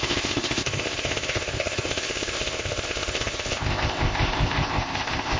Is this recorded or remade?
remade